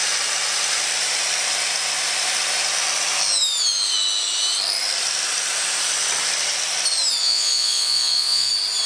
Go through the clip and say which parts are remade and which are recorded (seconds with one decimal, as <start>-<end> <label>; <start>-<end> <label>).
0.0-7.2 recorded; 7.2-8.5 remade; 8.5-8.9 recorded